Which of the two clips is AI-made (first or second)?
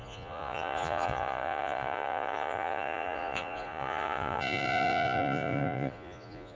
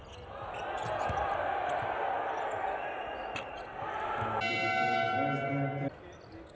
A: first